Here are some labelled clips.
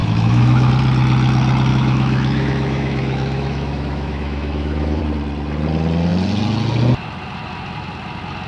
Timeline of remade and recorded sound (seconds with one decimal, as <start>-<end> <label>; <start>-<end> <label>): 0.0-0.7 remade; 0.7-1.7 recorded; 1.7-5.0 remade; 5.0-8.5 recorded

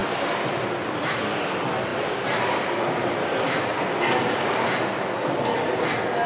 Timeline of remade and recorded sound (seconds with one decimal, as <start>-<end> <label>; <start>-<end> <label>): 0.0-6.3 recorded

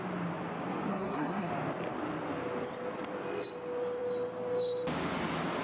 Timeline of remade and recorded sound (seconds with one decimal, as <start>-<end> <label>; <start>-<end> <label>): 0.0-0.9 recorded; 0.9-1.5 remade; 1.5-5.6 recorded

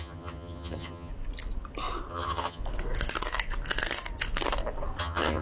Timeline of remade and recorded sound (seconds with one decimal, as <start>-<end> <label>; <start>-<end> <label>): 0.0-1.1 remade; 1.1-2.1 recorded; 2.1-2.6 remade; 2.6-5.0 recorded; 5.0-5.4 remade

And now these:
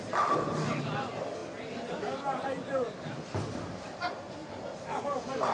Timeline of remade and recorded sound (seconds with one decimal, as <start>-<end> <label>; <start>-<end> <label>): 0.0-5.5 recorded

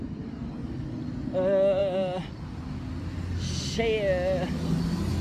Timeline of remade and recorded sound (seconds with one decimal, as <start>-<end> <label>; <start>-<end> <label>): 0.0-5.2 recorded

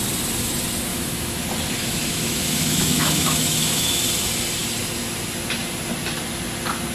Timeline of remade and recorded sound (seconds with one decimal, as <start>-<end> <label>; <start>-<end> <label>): 0.0-0.9 recorded; 0.9-1.4 remade; 1.4-1.8 recorded; 1.8-4.0 remade; 4.0-6.9 recorded